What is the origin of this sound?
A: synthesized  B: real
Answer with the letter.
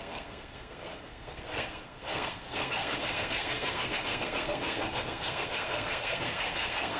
A